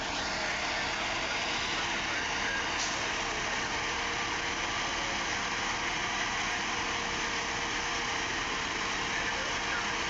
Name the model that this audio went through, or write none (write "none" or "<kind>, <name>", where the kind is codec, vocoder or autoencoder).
none